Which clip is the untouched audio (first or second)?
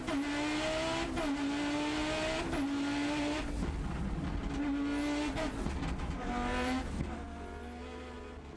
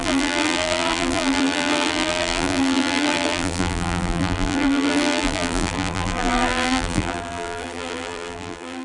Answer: first